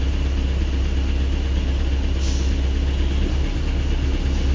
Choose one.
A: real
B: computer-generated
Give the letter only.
A